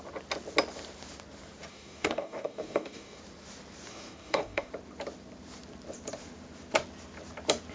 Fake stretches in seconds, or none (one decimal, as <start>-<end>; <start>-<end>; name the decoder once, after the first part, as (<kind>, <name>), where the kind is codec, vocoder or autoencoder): 1.7-3.2 (codec, DAC); 3.9-4.7